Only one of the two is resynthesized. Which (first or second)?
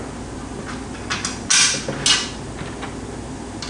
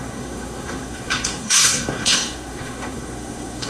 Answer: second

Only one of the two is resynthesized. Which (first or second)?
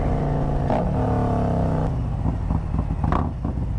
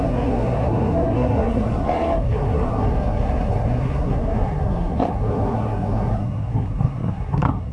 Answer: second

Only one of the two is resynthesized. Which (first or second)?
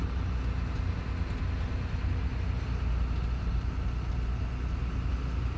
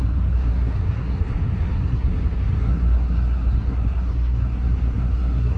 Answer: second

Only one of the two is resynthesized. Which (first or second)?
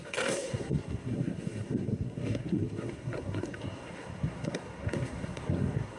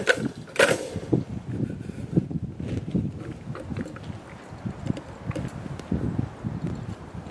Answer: first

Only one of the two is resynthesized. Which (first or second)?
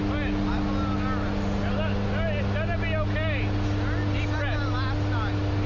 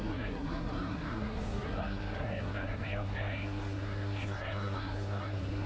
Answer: second